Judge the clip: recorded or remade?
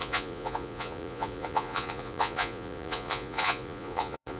remade